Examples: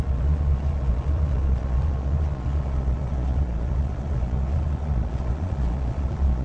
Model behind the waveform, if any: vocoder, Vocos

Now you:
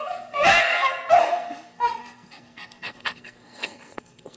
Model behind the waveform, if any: codec, SNAC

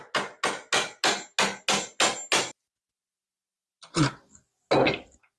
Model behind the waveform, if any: none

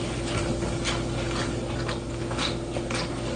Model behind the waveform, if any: none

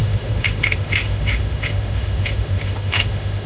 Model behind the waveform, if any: autoencoder, DAC-VAE